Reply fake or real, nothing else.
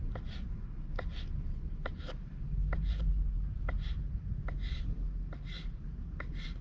real